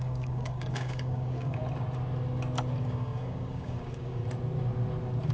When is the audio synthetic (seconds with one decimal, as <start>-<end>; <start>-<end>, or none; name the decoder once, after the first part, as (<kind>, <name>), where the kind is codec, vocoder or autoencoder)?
0.0-1.6 (codec, DAC); 2.8-4.2